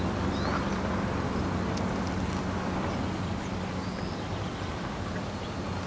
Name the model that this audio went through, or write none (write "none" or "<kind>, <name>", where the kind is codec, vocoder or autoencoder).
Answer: none